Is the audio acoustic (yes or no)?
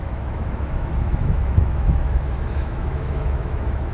no